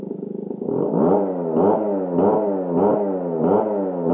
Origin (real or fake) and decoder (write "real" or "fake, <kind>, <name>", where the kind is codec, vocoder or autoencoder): real